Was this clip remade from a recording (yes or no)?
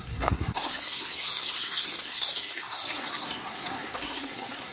yes